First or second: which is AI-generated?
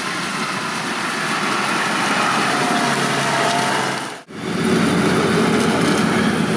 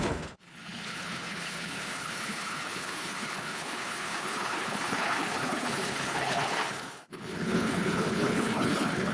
second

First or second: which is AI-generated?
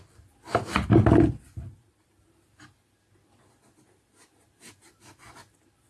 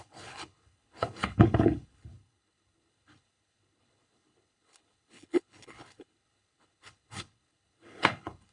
second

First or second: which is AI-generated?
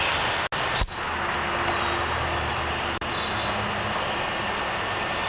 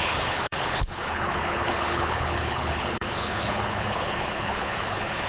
second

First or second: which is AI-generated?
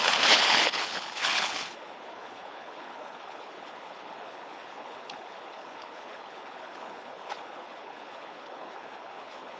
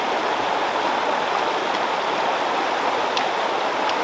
first